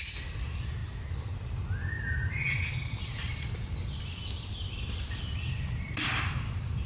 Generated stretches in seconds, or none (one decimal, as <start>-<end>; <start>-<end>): none